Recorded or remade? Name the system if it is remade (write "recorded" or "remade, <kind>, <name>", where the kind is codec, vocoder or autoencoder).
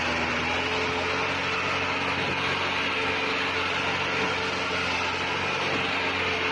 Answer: recorded